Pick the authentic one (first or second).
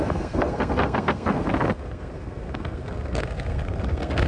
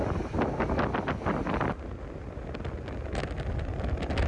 second